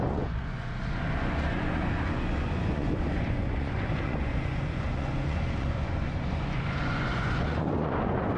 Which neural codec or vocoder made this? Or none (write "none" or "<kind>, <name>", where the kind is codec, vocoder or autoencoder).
vocoder, Vocos